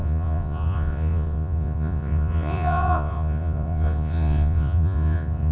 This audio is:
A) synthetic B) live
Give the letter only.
A